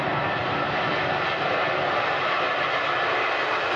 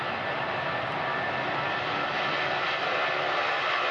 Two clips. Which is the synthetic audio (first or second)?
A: first